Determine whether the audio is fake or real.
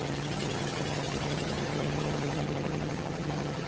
fake